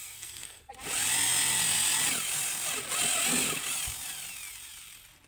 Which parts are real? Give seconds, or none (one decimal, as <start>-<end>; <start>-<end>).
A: 0.7-5.3